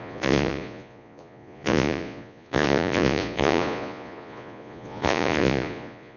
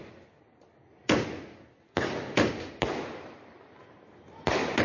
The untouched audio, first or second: second